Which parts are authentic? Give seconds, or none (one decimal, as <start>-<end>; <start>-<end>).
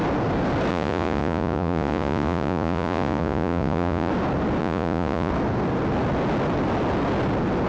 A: 0.0-0.7; 4.1-4.6; 5.3-7.7